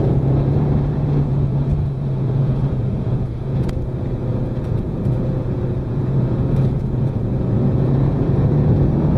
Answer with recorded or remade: remade